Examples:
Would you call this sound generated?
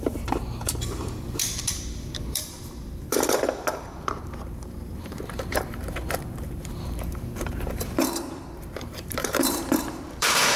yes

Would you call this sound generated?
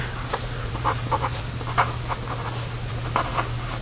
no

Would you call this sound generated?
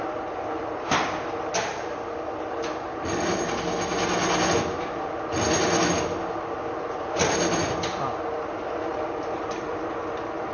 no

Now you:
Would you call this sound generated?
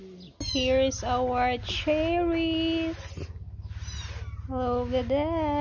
no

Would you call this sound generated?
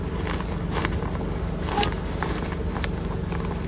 no